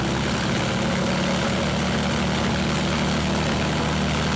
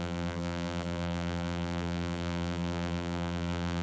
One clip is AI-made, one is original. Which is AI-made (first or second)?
second